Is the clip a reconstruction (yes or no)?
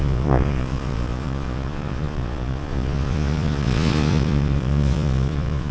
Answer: yes